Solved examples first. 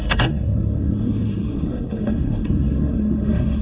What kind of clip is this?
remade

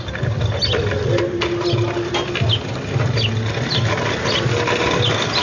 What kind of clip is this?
recorded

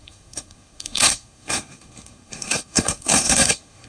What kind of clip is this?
remade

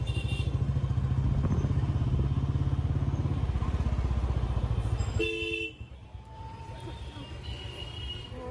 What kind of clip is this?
recorded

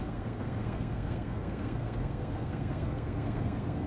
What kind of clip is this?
remade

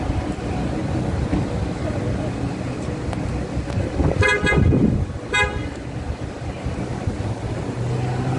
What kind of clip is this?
recorded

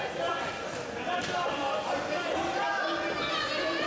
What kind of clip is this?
recorded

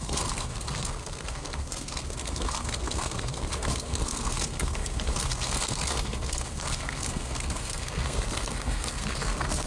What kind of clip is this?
remade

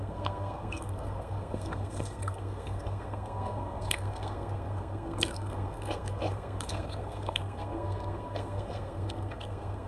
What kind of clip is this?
remade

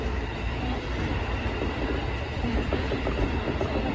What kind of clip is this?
recorded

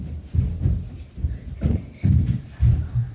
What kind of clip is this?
recorded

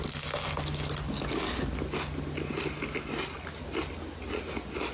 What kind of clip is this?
recorded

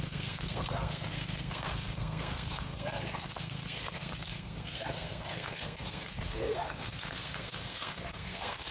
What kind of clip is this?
remade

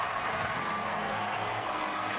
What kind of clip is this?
remade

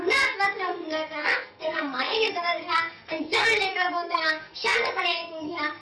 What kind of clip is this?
remade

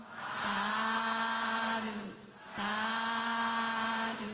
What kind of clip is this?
recorded